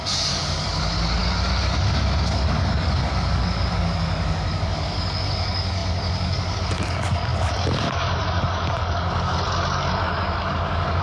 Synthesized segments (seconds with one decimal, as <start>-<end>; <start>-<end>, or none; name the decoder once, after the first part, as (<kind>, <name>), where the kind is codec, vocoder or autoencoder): 0.0-11.0 (codec, DAC)